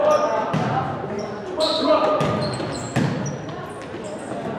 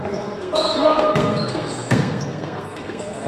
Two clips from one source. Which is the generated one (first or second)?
second